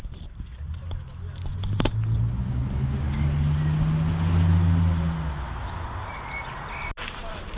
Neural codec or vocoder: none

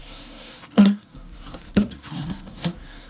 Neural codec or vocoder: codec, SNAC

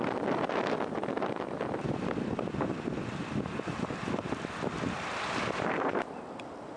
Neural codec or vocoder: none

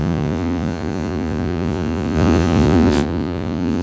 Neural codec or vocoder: vocoder, Vocos